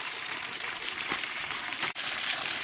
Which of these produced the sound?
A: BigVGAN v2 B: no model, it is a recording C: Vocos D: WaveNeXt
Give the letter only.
A